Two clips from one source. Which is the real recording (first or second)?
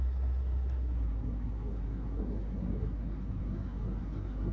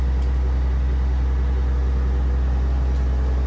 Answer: second